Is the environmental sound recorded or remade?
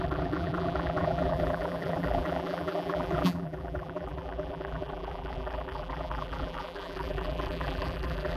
remade